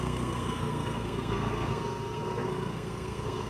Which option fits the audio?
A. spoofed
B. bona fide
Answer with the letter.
A